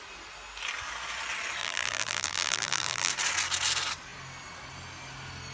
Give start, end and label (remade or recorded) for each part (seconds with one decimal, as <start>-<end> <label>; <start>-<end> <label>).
0.0-1.6 recorded; 1.6-3.1 remade; 3.1-5.5 recorded